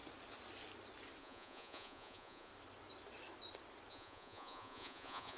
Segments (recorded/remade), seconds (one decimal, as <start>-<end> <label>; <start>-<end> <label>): 0.0-1.2 recorded; 1.2-2.5 remade; 2.5-3.9 recorded; 3.9-5.4 remade